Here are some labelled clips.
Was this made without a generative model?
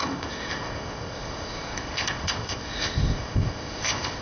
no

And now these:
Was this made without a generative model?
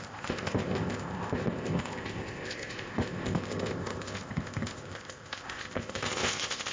no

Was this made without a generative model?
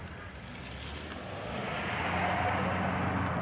yes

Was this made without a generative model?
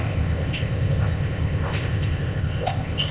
no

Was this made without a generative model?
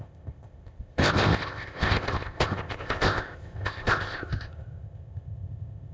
no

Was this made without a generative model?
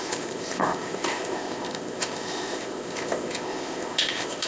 no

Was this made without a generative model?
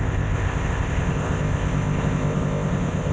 no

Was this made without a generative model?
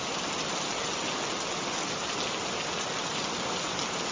yes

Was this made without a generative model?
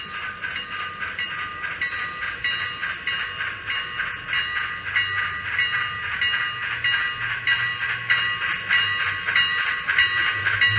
yes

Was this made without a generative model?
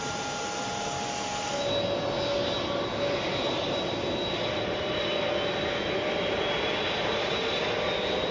yes